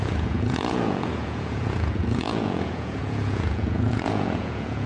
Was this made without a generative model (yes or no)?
no